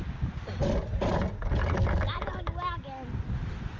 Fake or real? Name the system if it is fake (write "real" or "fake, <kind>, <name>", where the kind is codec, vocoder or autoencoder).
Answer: real